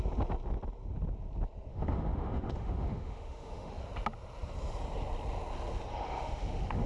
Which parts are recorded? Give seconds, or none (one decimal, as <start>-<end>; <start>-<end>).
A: 0.0-1.7; 3.7-5.9